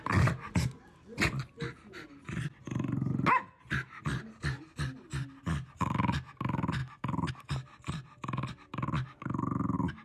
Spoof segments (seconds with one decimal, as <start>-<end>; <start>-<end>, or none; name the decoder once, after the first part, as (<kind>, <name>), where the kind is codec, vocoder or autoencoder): none